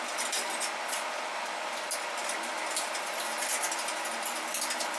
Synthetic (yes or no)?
no